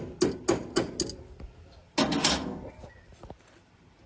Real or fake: real